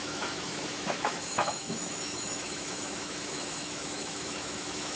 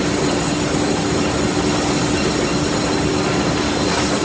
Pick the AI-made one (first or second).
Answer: first